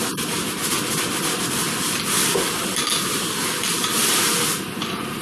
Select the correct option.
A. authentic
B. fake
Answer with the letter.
A